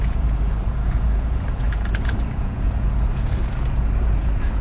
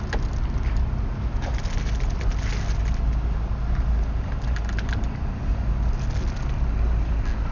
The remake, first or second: first